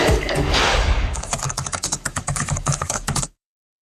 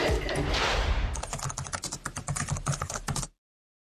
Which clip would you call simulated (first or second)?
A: first